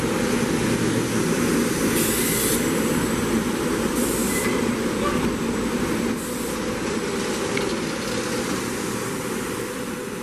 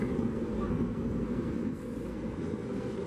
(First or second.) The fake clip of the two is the second